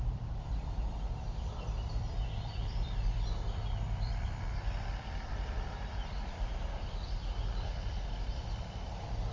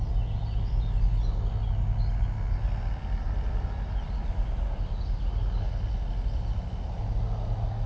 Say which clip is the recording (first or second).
second